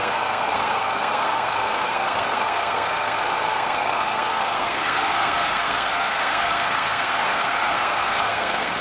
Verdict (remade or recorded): remade